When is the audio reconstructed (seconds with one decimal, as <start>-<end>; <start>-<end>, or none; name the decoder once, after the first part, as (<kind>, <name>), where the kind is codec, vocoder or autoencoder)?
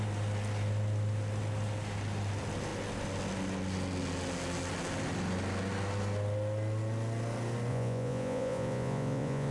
7.7-9.5 (vocoder, Vocos)